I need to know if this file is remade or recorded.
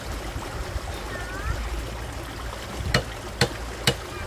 recorded